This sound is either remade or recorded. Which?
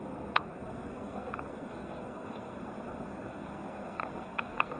remade